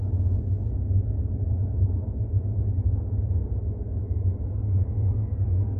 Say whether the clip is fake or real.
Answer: real